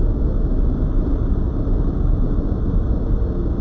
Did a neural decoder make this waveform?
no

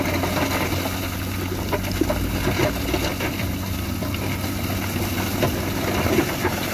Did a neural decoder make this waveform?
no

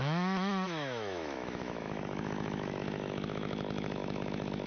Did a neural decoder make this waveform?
yes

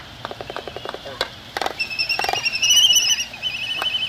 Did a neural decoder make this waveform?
no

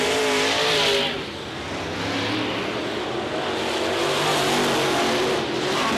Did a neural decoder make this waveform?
no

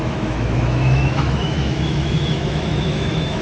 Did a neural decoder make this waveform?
yes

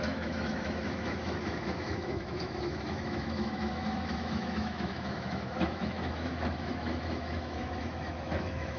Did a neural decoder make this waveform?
yes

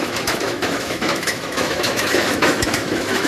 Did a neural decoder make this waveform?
yes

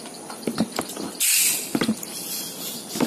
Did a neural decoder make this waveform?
no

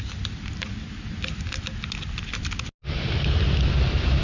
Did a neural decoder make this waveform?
no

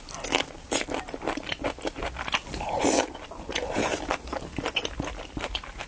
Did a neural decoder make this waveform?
no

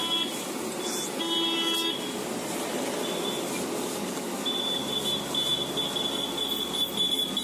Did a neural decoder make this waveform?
no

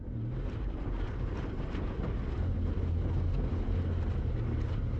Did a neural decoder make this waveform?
no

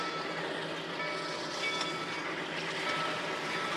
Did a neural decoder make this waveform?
no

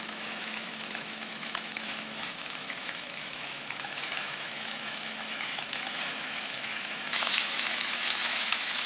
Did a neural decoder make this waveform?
yes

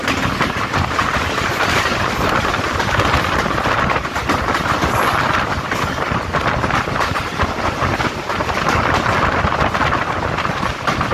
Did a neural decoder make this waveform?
no